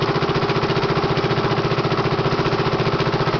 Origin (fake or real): real